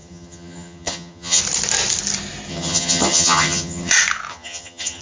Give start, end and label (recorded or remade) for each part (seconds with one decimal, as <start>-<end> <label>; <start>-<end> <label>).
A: 0.0-1.4 remade; 1.4-2.5 recorded; 2.5-3.9 remade; 3.9-4.3 recorded; 4.3-5.0 remade